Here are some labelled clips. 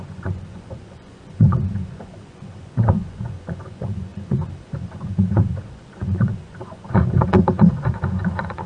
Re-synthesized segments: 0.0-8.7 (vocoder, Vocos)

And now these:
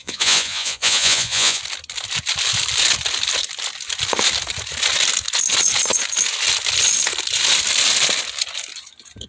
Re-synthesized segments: 0.0-1.6 (vocoder, Vocos)